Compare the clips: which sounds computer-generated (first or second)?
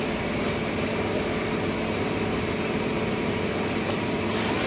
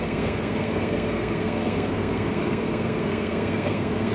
second